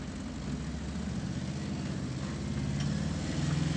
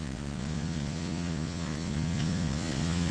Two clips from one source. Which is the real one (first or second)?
first